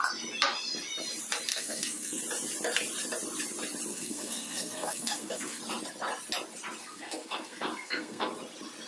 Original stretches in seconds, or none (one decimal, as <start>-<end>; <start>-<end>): 0.0-1.5; 2.2-3.9; 5.6-6.8; 8.3-8.9